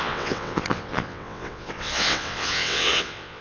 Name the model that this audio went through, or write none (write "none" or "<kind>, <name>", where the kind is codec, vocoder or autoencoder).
vocoder, WaveNeXt